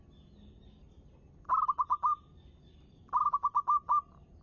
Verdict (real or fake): real